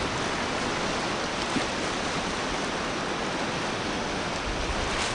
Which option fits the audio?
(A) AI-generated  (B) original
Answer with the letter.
B